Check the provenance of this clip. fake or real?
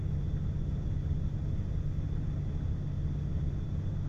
real